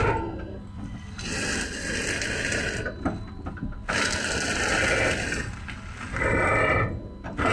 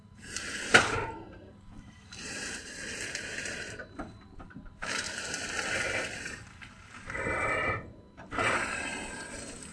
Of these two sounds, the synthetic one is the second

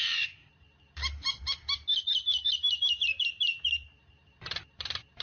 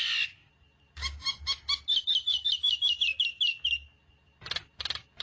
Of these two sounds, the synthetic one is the first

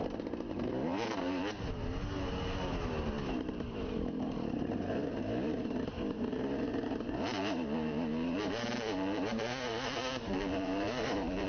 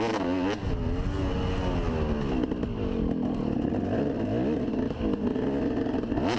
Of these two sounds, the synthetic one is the first